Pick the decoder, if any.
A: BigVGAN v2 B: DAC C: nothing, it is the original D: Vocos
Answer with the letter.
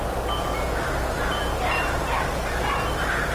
A